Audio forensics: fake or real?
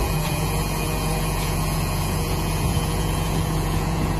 fake